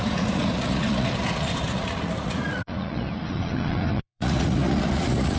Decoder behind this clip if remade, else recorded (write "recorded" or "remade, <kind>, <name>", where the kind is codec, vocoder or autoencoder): remade, vocoder, Vocos